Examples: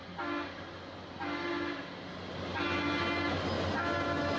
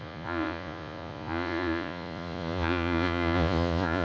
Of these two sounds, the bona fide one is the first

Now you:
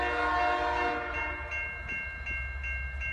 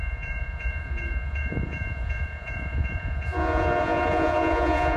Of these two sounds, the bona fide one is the first